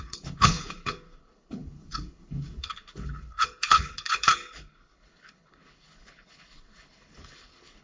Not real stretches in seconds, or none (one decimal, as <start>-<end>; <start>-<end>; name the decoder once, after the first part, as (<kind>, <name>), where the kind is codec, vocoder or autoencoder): 0.0-7.8 (codec, HILCodec)